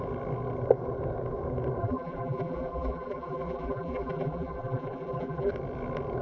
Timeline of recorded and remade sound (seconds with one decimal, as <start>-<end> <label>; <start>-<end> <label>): 0.0-1.8 recorded; 1.8-5.5 remade; 5.5-6.2 recorded

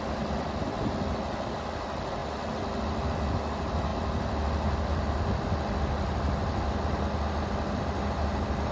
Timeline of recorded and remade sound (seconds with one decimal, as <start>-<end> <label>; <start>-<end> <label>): 0.0-8.7 recorded